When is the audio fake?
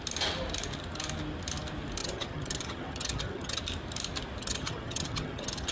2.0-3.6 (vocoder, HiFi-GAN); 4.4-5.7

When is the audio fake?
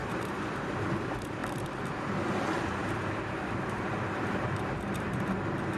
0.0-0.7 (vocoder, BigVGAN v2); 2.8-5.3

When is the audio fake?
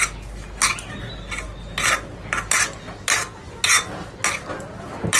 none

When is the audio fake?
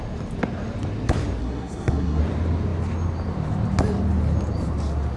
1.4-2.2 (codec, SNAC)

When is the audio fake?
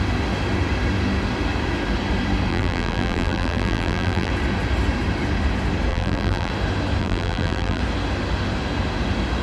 2.5-4.3 (vocoder, BigVGAN v2); 5.9-6.5; 7.0-7.8